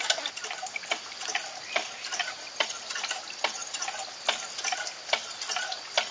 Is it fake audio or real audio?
real